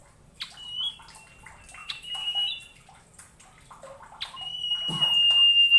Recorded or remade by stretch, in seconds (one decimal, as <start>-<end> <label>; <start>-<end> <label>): 0.0-1.8 recorded; 1.8-2.5 remade; 2.5-5.8 recorded